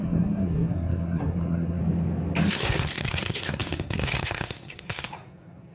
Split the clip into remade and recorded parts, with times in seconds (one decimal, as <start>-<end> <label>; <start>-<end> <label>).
0.0-1.8 remade; 1.8-2.5 recorded; 2.5-5.7 remade